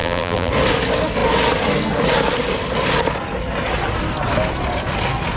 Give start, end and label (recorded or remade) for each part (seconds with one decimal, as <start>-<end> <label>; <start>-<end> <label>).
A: 0.0-0.5 remade; 0.5-5.4 recorded